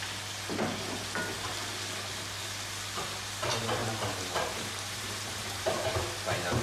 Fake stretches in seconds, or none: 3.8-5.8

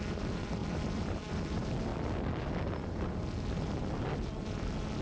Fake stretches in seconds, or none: 0.0-0.6; 1.1-1.9